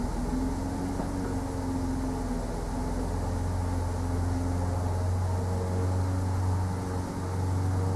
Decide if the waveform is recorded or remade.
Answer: recorded